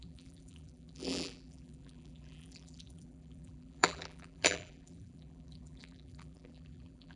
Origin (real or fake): fake